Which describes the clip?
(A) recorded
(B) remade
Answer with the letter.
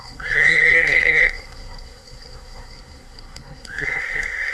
B